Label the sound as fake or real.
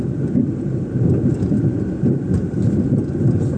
real